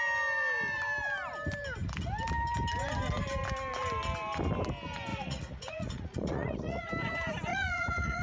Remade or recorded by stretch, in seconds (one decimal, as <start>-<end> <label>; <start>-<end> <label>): 0.0-5.1 recorded; 5.1-6.9 remade; 6.9-7.5 recorded; 7.5-8.2 remade